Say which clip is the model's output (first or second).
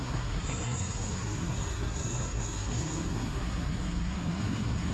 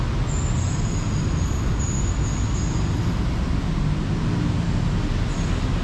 first